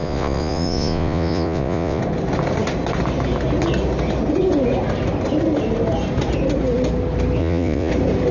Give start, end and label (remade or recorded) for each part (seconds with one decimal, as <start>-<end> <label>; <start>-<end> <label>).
0.0-2.0 remade; 2.0-7.4 recorded; 7.4-7.9 remade; 7.9-8.3 recorded